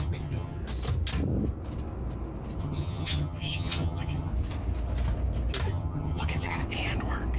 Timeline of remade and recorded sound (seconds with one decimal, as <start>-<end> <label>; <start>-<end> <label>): 0.0-0.6 remade; 0.6-2.6 recorded; 2.6-4.3 remade; 4.3-5.7 recorded; 5.7-6.6 remade; 6.6-7.4 recorded